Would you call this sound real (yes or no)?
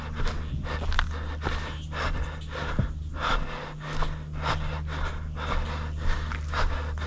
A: yes